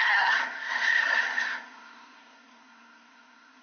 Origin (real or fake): fake